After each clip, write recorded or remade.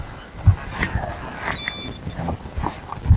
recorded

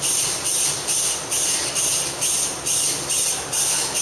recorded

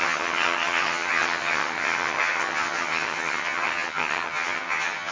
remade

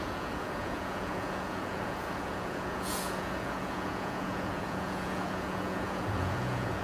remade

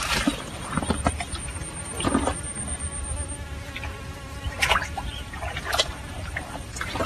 recorded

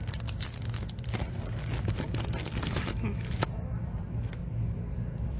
recorded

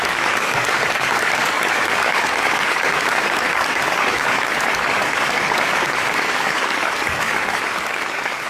remade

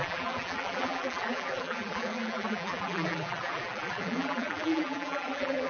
remade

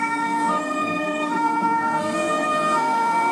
remade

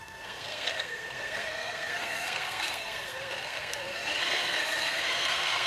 remade